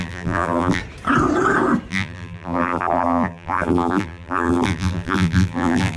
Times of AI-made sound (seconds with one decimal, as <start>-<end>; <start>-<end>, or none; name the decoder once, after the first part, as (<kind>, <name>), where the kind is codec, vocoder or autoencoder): 0.0-0.8 (vocoder, BigVGAN v2); 1.9-6.0